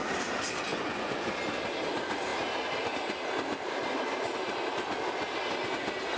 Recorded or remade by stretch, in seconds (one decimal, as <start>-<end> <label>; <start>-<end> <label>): 0.0-0.7 recorded; 0.7-1.3 remade; 1.3-6.2 recorded